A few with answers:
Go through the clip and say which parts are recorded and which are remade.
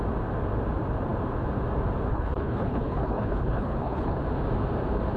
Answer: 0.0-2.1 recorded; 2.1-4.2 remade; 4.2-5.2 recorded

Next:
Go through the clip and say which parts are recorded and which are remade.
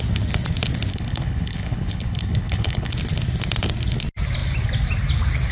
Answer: 0.0-0.9 recorded; 0.9-2.9 remade; 2.9-5.5 recorded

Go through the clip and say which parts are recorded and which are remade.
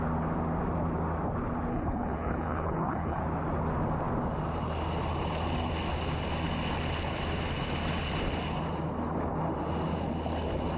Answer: 0.0-1.7 recorded; 1.7-3.2 remade; 3.2-10.8 recorded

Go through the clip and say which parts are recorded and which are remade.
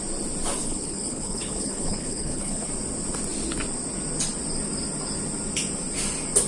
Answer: 0.0-0.6 recorded; 0.6-2.7 remade; 2.7-6.5 recorded